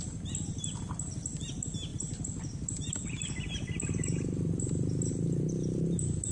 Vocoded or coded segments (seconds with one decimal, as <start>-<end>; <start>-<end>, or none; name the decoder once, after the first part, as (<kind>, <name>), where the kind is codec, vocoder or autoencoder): 1.9-5.1 (vocoder, BigVGAN v2)